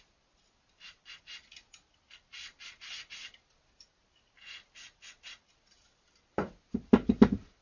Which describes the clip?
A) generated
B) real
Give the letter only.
B